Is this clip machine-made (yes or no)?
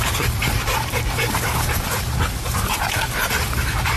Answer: yes